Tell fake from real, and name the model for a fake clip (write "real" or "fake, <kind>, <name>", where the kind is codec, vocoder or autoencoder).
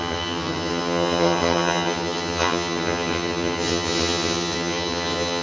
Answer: fake, vocoder, HiFi-GAN